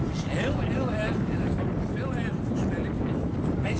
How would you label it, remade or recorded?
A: recorded